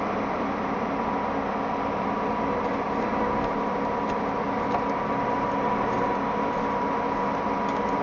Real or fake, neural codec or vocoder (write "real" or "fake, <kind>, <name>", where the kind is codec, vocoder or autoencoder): real